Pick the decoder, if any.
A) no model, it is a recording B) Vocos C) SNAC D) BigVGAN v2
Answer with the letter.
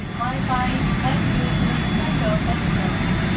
A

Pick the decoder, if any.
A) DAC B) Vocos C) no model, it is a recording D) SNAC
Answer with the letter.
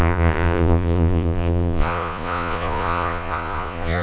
B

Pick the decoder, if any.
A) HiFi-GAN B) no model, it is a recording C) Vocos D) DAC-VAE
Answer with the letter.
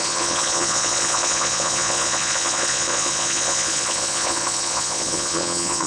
C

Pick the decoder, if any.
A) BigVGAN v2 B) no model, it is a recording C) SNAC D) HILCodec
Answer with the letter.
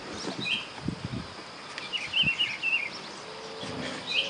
B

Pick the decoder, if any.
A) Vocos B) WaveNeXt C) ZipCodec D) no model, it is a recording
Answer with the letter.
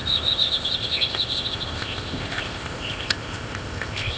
C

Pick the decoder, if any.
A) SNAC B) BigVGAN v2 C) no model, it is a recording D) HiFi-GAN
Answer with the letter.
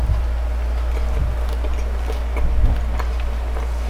C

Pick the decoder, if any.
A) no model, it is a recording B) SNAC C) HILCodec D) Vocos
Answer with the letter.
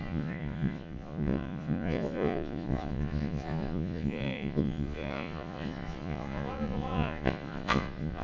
D